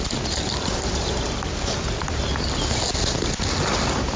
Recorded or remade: recorded